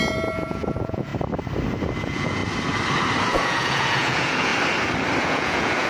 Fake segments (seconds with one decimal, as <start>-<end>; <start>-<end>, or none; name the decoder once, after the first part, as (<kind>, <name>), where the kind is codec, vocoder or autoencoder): 0.0-1.1 (vocoder, Vocos); 2.0-2.4; 3.2-4.5; 5.2-5.9